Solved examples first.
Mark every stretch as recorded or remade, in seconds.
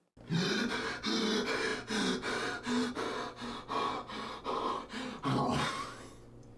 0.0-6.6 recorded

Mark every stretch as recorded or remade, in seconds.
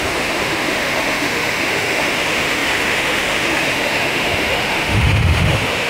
0.0-5.9 remade